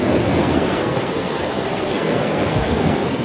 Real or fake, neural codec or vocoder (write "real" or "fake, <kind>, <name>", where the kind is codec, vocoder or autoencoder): fake, codec, SNAC